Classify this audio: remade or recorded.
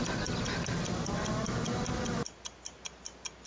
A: recorded